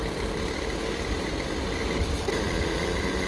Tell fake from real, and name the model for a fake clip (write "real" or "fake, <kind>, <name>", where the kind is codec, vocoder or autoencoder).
fake, vocoder, BigVGAN v2